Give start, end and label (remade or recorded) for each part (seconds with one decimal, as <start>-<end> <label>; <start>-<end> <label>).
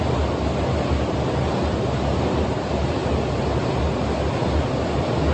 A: 0.0-5.3 recorded